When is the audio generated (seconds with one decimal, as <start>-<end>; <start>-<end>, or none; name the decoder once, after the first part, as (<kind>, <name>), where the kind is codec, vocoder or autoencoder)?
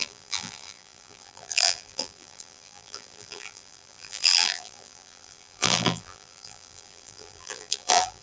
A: 0.0-8.2 (vocoder, BigVGAN v2)